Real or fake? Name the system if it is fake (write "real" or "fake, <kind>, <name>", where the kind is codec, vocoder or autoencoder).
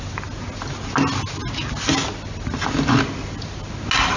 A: real